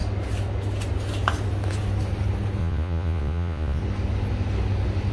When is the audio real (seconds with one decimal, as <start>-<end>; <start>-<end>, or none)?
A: 0.0-2.6; 3.8-5.1